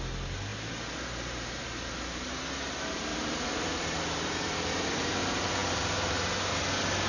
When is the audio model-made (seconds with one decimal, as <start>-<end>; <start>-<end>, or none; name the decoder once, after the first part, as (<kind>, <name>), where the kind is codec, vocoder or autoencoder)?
0.5-2.4 (vocoder, BigVGAN v2); 3.1-5.1; 5.6-6.5

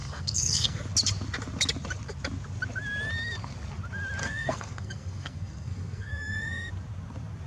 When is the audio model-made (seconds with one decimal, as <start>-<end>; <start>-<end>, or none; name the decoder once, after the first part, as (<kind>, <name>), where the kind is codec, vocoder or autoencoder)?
0.0-0.8 (codec, SNAC); 4.2-6.7

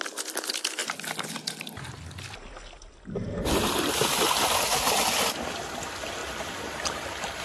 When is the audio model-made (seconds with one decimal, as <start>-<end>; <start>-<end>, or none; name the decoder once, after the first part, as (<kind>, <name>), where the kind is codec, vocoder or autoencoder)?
none

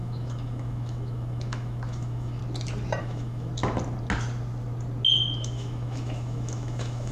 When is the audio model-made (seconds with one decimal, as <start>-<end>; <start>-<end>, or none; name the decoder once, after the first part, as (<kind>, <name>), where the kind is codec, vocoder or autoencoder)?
0.0-2.4 (autoencoder, DAC-VAE); 3.0-3.5; 5.4-7.1

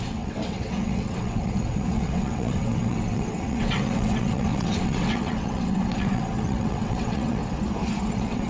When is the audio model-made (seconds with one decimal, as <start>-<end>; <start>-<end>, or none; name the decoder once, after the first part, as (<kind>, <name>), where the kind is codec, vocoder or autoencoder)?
0.0-7.4 (vocoder, WaveNeXt); 8.1-8.5

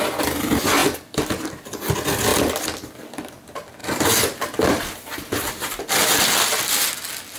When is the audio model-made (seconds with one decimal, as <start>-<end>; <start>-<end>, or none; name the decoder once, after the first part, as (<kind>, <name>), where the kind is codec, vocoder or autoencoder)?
0.8-1.8 (vocoder, BigVGAN v2); 3.8-6.2

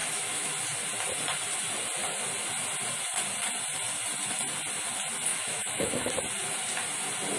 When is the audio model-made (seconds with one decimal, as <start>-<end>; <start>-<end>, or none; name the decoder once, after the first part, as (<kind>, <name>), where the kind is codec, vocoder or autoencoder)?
0.0-0.5 (autoencoder, DAC-VAE); 5.3-6.1

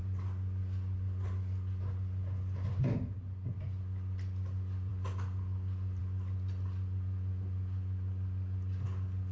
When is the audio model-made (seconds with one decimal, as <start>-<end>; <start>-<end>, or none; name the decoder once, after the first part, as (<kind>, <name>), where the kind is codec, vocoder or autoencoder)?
none